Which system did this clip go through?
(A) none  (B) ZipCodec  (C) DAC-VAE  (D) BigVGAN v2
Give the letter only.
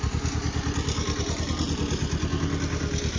A